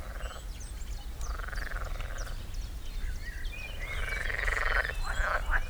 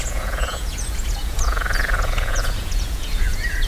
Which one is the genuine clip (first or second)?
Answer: first